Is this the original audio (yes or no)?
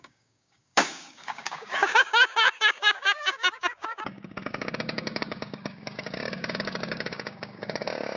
no